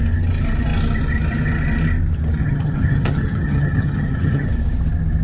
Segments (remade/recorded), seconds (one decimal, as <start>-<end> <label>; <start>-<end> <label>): 0.0-2.4 recorded; 2.4-4.5 remade; 4.5-5.2 recorded